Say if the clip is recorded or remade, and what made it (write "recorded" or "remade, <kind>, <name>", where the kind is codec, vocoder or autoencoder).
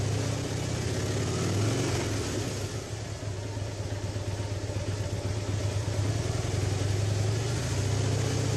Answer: recorded